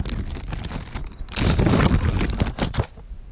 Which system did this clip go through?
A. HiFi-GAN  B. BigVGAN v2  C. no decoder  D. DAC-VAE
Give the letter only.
C